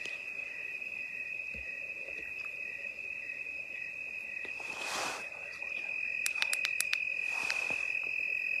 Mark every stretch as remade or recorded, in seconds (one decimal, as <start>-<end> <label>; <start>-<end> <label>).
0.0-8.6 recorded